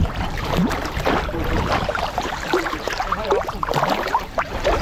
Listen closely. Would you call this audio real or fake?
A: fake